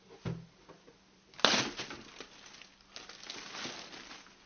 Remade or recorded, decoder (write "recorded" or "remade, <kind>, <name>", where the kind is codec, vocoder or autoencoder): recorded